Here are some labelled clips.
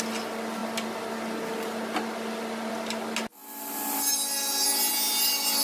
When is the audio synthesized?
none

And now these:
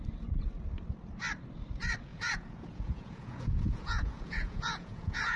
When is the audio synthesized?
2.1-5.4 (vocoder, Vocos)

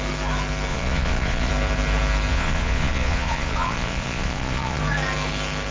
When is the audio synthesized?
0.7-1.5 (vocoder, Vocos); 2.3-4.8

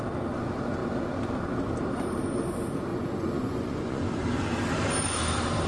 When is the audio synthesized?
2.9-4.0 (vocoder, Vocos)